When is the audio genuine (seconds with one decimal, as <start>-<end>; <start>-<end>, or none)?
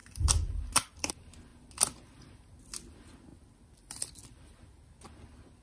1.1-3.3; 4.6-5.6